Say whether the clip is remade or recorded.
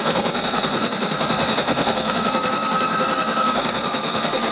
remade